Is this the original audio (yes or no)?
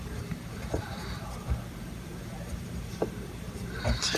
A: no